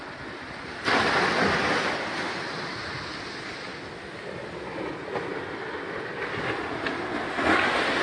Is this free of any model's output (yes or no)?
yes